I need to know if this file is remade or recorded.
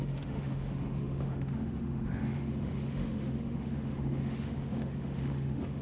remade